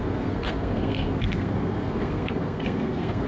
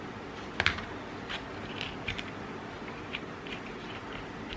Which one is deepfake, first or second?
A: first